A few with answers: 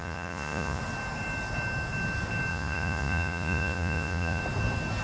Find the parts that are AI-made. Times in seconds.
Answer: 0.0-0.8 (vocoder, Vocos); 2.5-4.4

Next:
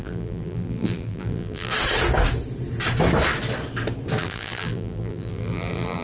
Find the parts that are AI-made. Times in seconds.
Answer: 0.0-1.7 (vocoder, BigVGAN v2); 4.2-6.0

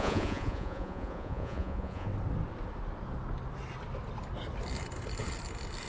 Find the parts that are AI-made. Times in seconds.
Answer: 0.0-2.1 (vocoder, Vocos)